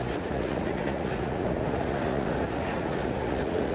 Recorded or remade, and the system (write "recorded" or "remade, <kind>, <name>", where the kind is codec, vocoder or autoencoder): remade, vocoder, Vocos